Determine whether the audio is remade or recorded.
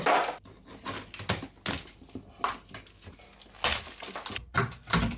recorded